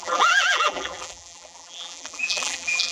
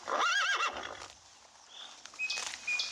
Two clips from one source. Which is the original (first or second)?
second